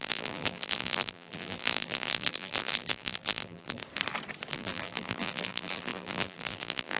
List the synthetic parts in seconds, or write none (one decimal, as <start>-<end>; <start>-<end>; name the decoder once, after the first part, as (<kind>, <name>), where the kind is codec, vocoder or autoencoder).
0.0-3.8 (vocoder, BigVGAN v2); 4.5-7.0

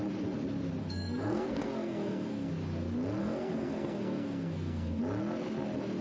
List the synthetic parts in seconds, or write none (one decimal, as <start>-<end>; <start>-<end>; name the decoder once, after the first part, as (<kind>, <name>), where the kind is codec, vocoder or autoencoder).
0.8-2.5 (codec, SNAC); 3.2-5.0

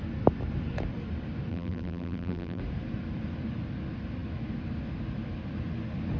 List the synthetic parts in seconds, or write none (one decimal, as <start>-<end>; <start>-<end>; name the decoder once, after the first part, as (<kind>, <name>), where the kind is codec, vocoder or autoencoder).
1.5-2.6 (vocoder, BigVGAN v2)

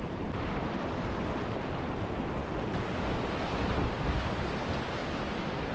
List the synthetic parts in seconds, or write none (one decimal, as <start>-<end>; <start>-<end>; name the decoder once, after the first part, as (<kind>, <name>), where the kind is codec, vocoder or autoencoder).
none

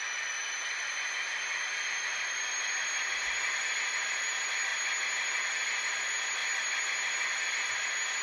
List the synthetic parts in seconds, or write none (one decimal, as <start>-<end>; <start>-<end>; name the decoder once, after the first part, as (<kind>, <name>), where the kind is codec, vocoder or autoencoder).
none

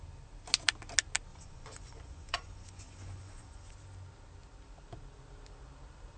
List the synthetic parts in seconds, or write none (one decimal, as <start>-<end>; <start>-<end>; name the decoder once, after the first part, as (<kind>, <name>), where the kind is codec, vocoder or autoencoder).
1.3-3.7 (vocoder, Vocos)